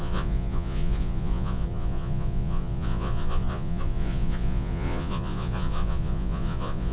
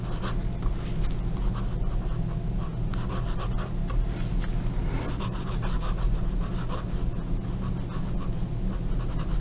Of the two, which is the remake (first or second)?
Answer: first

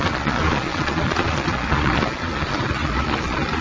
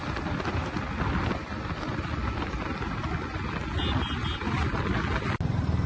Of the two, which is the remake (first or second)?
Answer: first